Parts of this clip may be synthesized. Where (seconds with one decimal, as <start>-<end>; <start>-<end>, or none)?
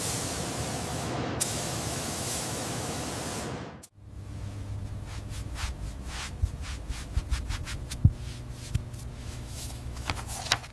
0.9-3.1; 9.2-10.1